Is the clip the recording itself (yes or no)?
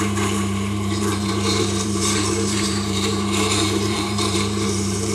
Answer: no